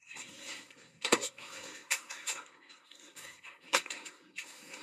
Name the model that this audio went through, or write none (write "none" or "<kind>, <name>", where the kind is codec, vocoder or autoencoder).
codec, SNAC